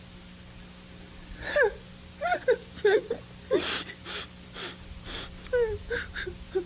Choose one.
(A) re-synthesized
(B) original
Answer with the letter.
B